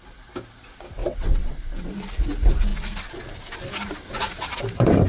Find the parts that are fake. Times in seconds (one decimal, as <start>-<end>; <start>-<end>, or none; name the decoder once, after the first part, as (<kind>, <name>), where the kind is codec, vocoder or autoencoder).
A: 1.0-1.9 (vocoder, WaveNeXt)